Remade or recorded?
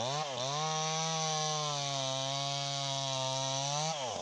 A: recorded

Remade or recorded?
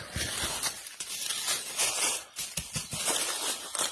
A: recorded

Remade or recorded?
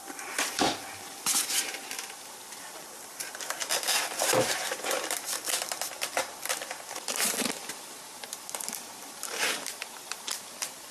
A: remade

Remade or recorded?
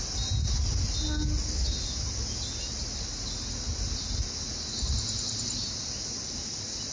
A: recorded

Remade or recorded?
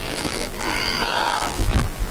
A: remade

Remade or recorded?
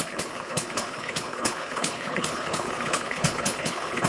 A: remade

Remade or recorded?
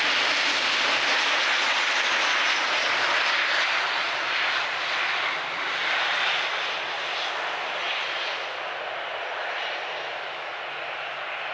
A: recorded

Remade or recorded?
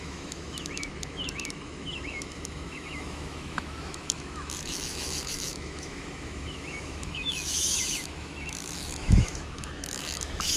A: remade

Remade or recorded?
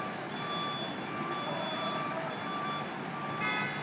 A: recorded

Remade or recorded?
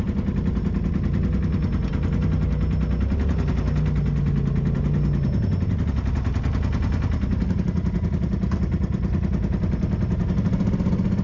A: recorded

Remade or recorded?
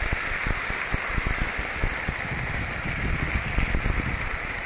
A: recorded